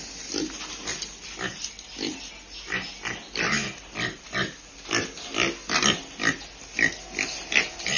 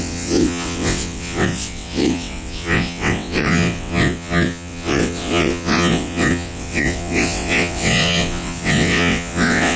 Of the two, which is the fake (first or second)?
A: second